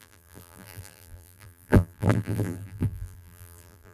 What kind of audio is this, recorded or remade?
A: remade